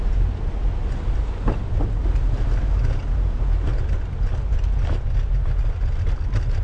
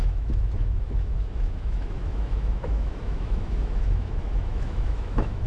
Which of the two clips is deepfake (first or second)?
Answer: second